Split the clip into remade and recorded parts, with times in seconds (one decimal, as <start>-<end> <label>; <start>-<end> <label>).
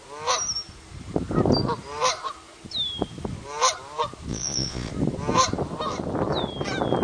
0.0-4.3 recorded; 4.3-4.9 remade; 4.9-7.0 recorded